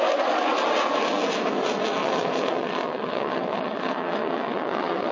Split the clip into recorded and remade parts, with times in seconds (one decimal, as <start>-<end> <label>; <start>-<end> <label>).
0.0-2.0 recorded; 2.0-5.1 remade